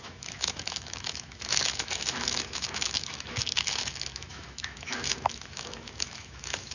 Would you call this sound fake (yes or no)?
yes